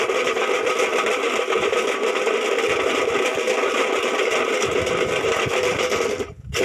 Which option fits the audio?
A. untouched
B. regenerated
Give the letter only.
A